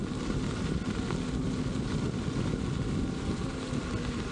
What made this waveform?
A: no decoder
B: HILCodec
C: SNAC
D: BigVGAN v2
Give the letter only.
A